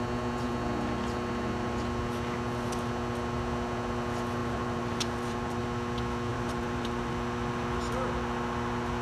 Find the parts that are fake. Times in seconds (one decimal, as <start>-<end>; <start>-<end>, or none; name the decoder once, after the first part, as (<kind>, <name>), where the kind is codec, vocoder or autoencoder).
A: 4.4-5.6 (vocoder, BigVGAN v2); 6.3-7.1